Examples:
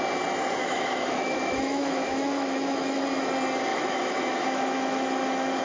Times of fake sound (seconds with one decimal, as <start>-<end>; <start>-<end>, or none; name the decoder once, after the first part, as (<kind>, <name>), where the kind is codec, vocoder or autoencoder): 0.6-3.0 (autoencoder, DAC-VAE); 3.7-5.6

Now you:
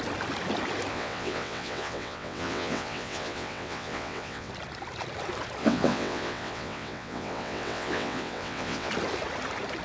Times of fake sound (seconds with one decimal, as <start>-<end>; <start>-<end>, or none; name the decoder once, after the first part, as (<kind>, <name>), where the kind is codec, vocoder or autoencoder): 0.9-4.5 (vocoder, WaveNeXt); 5.6-8.9

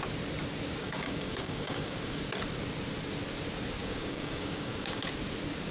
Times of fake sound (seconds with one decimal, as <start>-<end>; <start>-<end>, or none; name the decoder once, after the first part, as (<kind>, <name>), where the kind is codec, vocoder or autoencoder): 0.8-2.2 (codec, DAC); 3.8-5.0

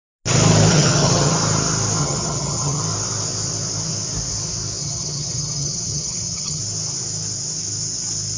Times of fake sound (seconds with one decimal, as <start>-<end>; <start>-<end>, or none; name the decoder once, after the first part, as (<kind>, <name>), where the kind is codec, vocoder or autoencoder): 0.7-1.3 (vocoder, HiFi-GAN); 2.0-2.8; 4.8-6.6

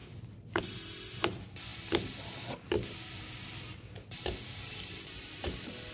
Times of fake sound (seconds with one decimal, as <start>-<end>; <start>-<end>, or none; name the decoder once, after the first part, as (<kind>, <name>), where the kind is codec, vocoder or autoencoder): none

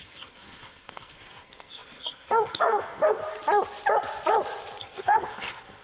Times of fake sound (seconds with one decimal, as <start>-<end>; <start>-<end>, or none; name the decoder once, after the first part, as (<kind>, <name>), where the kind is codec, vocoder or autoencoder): 0.0-3.2 (codec, SNAC); 4.8-5.8